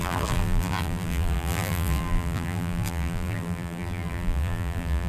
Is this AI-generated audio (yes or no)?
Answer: yes